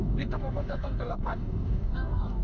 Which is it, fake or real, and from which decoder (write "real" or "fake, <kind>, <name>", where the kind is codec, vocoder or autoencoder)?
fake, codec, DAC